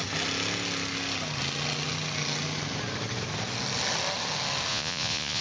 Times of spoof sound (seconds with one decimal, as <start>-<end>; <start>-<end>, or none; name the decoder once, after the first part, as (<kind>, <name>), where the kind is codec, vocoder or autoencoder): 4.7-5.4 (vocoder, Vocos)

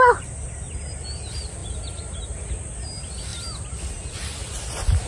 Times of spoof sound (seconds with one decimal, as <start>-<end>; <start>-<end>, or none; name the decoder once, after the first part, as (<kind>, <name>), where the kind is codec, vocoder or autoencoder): none

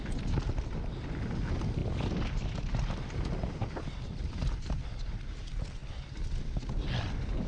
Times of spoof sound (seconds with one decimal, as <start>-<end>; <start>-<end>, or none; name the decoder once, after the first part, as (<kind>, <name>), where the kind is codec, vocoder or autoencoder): none

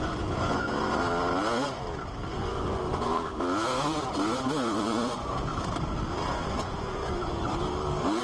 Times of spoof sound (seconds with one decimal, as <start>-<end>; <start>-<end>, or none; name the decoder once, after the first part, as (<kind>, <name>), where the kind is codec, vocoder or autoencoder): 0.0-1.0 (vocoder, Vocos); 2.3-3.3; 4.8-5.5; 6.3-7.5

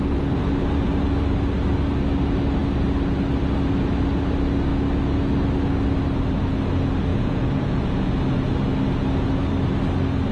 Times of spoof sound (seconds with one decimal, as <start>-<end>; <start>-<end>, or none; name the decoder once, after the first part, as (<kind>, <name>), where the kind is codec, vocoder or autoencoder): 7.1-8.1 (vocoder, Vocos)